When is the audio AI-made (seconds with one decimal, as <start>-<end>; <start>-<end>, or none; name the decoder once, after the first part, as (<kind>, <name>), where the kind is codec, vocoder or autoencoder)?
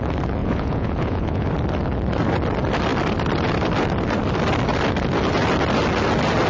0.4-1.5 (vocoder, Vocos)